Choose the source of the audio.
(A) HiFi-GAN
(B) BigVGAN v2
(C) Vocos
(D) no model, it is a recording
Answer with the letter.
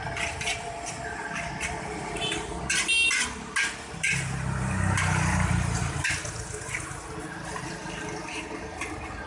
D